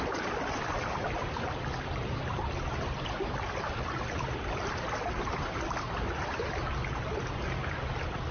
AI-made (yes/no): no